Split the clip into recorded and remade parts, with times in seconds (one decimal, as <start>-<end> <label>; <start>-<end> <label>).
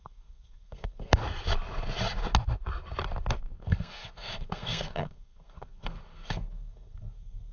0.0-1.2 remade; 1.2-3.3 recorded; 3.3-7.5 remade